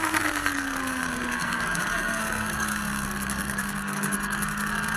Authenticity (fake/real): fake